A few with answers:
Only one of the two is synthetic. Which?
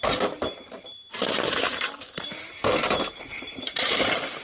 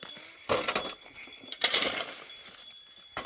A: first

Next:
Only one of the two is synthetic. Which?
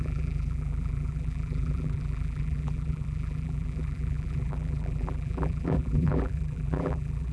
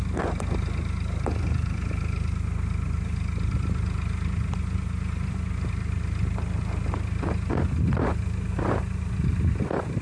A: first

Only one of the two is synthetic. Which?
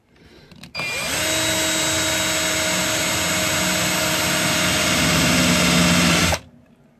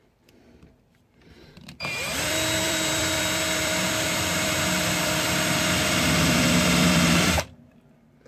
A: second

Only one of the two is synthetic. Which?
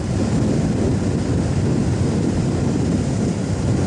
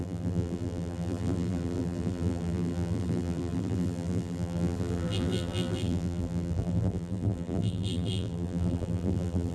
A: second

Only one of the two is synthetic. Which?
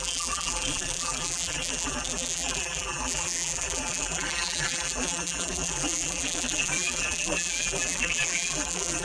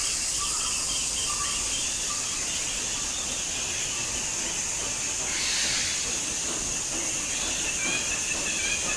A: first